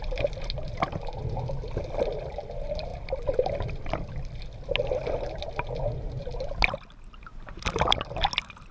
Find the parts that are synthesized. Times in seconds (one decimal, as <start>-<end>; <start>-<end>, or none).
2.9-4.4; 7.3-8.1